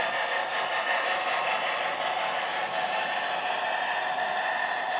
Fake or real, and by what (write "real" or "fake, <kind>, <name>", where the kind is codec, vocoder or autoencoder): real